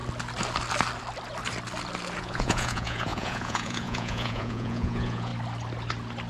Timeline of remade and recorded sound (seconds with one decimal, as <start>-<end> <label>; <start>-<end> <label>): 0.0-2.2 recorded; 2.2-5.3 remade; 5.3-6.3 recorded